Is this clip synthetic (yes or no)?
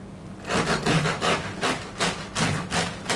no